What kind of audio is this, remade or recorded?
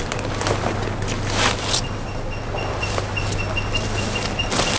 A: recorded